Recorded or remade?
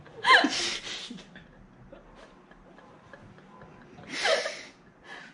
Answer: recorded